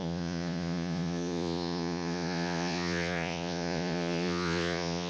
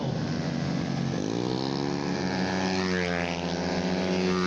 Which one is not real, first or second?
first